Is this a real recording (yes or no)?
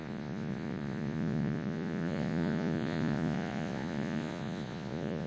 no